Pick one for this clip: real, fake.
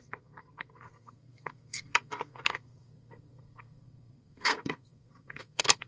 fake